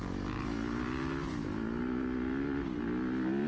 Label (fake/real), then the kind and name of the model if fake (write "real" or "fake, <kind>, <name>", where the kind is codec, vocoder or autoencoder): real